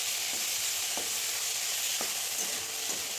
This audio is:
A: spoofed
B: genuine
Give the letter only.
B